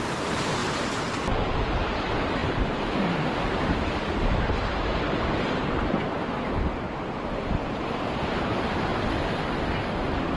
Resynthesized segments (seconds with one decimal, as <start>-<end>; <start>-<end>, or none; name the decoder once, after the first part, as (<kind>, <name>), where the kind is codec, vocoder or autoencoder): 0.0-0.6 (vocoder, BigVGAN v2); 1.3-8.9